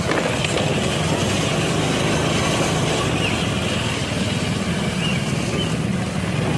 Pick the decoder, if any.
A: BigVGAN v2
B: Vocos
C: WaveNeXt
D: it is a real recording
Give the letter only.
D